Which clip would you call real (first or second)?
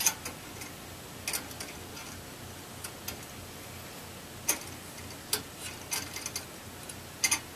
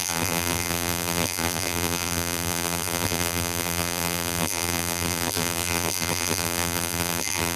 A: first